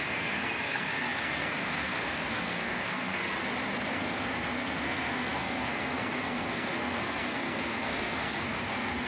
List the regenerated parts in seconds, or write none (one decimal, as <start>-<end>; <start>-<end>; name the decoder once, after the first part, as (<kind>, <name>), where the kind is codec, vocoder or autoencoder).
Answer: 0.0-3.3 (codec, SNAC); 3.9-9.1